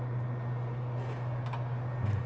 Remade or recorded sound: recorded